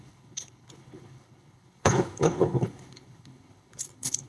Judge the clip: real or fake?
fake